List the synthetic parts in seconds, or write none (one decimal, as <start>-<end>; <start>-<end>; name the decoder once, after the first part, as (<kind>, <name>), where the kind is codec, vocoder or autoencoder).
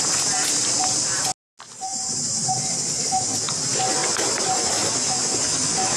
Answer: 1.9-2.5 (vocoder, BigVGAN v2); 4.0-4.7